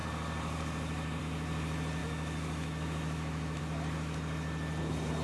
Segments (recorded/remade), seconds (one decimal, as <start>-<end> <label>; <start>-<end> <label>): 0.0-2.0 recorded; 2.0-3.6 remade; 3.6-5.2 recorded